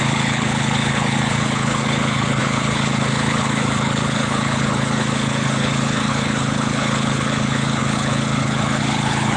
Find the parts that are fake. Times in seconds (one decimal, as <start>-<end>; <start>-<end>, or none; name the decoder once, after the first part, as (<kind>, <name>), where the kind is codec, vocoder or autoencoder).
0.0-9.4 (codec, HILCodec)